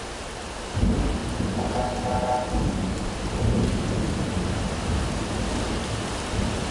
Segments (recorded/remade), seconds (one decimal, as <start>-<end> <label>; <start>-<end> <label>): 0.0-6.7 recorded